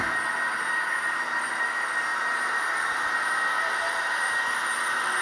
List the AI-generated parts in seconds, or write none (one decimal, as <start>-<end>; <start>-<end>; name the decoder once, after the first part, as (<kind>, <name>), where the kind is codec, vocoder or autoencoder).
none